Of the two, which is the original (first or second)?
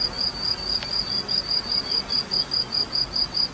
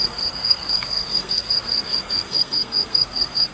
first